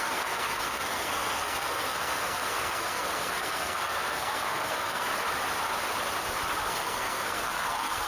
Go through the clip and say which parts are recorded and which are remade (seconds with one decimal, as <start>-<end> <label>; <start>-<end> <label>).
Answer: 0.0-5.1 remade; 5.1-6.6 recorded; 6.6-8.1 remade